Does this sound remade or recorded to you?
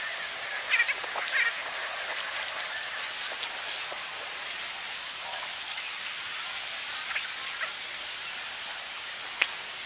recorded